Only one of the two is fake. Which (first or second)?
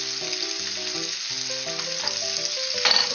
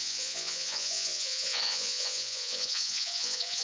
second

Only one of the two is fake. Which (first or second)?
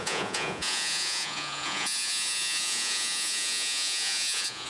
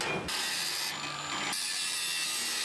first